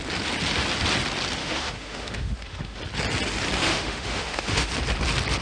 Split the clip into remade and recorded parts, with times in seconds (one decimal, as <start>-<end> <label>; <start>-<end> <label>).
0.0-1.4 recorded; 1.4-2.8 remade; 2.8-3.7 recorded; 3.7-4.7 remade; 4.7-5.4 recorded